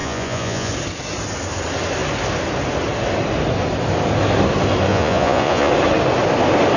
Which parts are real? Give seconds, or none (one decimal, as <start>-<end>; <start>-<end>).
0.7-4.9; 5.7-6.8